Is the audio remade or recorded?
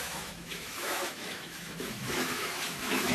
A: remade